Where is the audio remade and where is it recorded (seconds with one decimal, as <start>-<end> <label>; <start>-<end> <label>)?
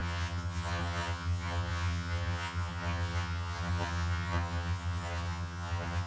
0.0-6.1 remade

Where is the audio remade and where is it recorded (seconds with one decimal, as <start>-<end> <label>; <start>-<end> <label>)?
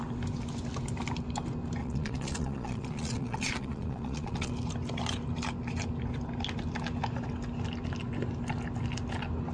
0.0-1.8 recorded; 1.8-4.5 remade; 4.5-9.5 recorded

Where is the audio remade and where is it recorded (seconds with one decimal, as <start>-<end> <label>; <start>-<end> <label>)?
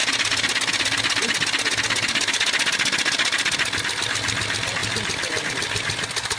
0.0-6.4 recorded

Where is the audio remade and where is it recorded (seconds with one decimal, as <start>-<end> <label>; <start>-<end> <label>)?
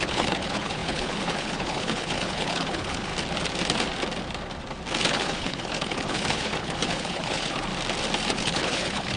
0.0-3.1 remade; 3.1-5.1 recorded; 5.1-7.7 remade; 7.7-8.3 recorded; 8.3-9.2 remade